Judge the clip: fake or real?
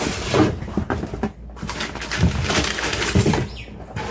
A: real